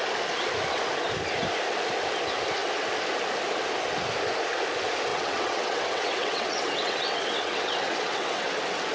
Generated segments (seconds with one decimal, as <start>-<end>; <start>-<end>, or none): 5.1-8.5